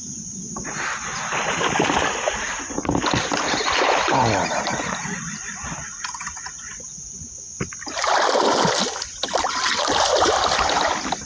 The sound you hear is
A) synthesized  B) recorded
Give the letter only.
B